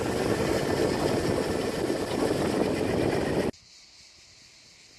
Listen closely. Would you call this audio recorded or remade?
recorded